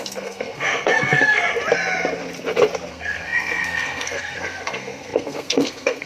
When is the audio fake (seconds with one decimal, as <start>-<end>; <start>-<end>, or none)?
0.0-1.4; 2.9-6.1